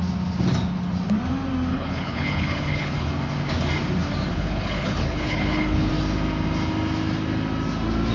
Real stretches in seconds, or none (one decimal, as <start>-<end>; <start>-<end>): 0.0-1.7; 3.1-4.3; 5.9-8.1